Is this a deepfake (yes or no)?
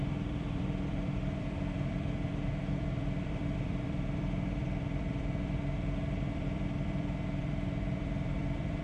yes